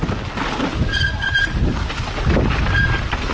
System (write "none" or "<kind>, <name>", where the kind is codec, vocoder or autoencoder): none